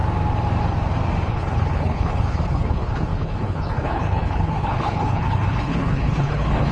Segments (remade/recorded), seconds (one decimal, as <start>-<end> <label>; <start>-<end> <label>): 0.0-1.3 recorded; 1.3-6.7 remade